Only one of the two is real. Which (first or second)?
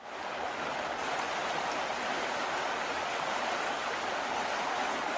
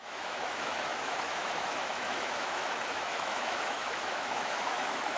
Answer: first